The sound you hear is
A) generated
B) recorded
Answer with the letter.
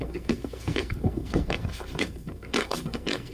A